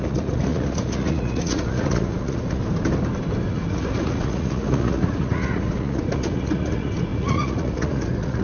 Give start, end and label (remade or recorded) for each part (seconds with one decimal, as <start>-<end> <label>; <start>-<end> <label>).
0.0-2.6 remade; 2.6-3.5 recorded; 3.5-8.4 remade